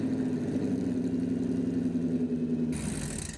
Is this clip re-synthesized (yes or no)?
no